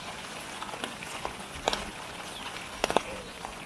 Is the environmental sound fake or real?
fake